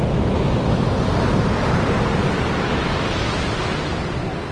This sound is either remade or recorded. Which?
recorded